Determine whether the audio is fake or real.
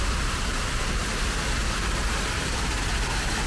real